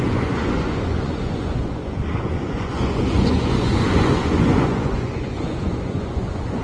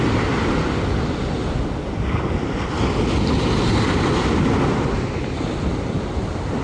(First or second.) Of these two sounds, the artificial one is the first